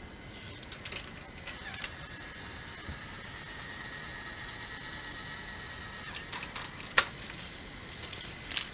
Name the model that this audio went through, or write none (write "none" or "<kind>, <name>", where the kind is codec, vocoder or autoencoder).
none